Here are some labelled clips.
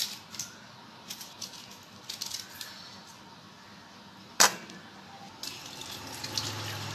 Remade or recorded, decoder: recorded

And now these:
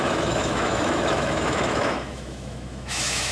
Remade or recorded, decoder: remade, autoencoder, DAC-VAE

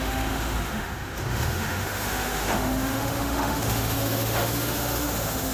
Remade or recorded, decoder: remade, autoencoder, DAC-VAE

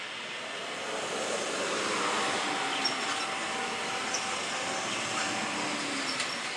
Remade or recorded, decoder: recorded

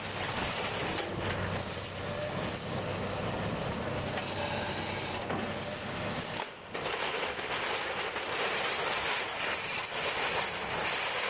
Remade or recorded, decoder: recorded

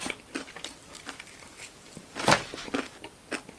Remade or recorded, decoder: recorded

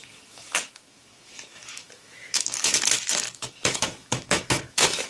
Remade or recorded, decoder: remade, autoencoder, DAC-VAE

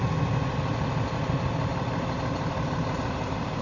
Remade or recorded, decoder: recorded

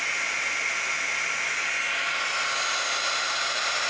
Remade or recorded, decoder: recorded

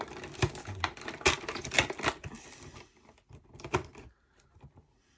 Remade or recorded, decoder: recorded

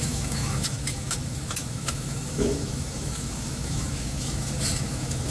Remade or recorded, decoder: remade, autoencoder, DAC-VAE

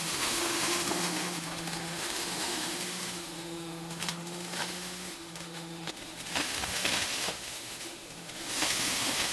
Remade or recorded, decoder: remade, autoencoder, DAC-VAE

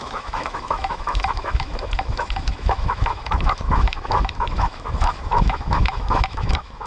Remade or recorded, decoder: remade, autoencoder, DAC-VAE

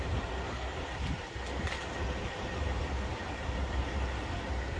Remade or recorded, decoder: recorded